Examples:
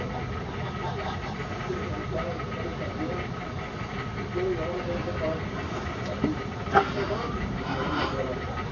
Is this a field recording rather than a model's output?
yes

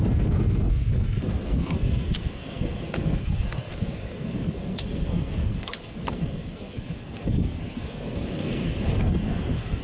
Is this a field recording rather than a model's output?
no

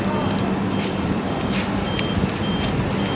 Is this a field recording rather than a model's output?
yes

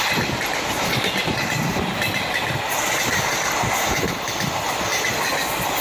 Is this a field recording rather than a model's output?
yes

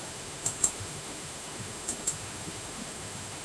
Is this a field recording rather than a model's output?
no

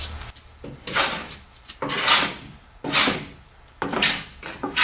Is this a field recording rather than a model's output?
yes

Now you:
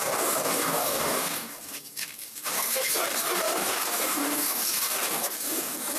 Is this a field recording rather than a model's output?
no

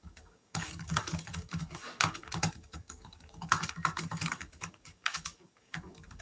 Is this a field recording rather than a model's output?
no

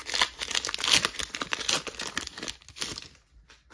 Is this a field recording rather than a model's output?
yes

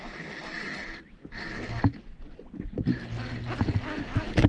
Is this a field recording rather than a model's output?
yes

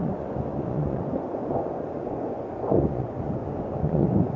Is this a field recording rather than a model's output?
no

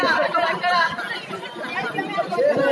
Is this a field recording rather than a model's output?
yes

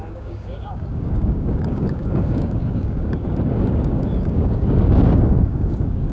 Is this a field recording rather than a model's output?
no